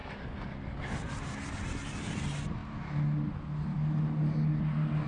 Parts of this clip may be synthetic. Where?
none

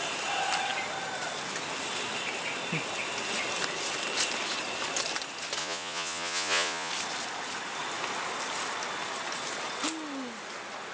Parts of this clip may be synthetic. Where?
5.6-6.9 (vocoder, Vocos)

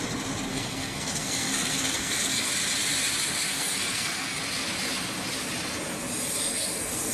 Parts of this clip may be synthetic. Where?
0.5-2.5 (codec, SNAC); 3.5-4.4; 6.4-7.1

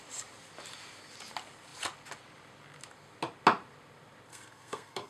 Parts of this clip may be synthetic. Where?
4.3-5.1 (codec, SNAC)

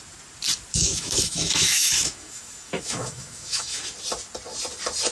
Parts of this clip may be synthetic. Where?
0.7-3.8 (autoencoder, DAC-VAE)

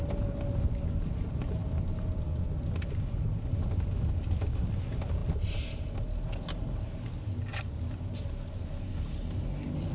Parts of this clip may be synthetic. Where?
none

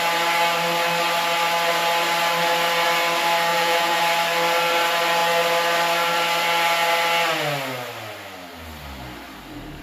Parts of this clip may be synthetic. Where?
3.5-4.0 (vocoder, Vocos)

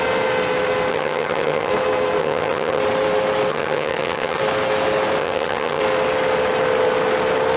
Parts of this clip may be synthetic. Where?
0.9-1.7 (vocoder, HiFi-GAN); 2.2-2.8; 3.5-4.4; 5.2-5.8